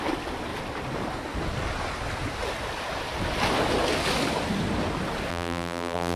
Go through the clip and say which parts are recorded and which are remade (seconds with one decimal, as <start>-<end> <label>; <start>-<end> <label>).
0.0-5.3 recorded; 5.3-6.2 remade